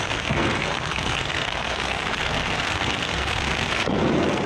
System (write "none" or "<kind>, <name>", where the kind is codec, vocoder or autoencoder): codec, SNAC